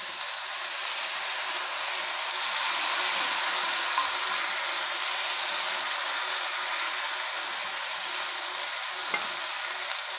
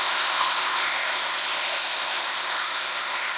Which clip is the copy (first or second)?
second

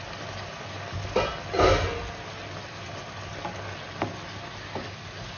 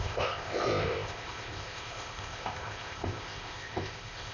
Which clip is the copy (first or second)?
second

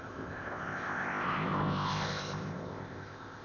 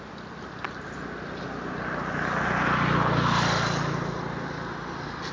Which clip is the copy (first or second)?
first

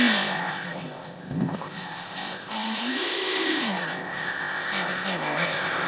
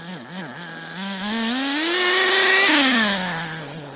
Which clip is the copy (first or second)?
first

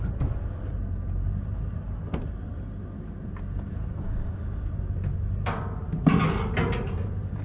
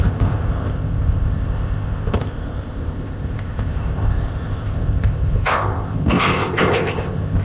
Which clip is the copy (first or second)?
second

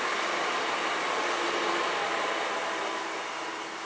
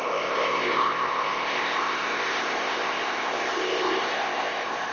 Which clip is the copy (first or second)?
second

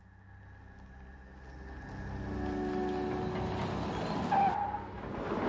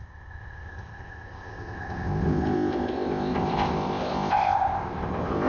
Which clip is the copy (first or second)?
second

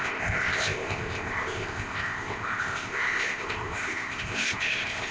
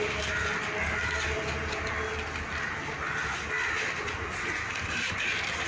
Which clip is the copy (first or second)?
first